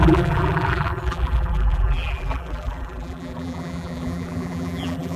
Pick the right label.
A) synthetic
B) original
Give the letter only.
A